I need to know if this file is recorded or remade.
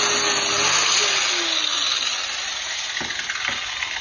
recorded